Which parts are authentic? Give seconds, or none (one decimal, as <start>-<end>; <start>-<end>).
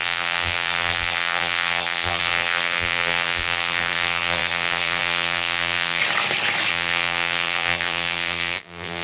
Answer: 6.0-6.7